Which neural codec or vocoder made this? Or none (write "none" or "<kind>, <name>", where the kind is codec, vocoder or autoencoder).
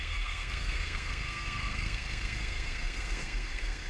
codec, SNAC